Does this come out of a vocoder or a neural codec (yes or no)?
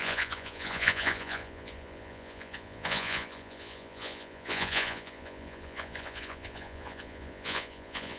yes